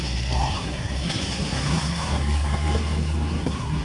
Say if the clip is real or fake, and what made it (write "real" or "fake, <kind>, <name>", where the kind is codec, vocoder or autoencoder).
fake, codec, SNAC